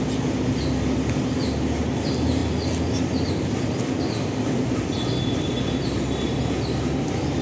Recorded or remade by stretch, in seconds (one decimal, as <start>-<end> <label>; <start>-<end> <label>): 0.0-7.4 recorded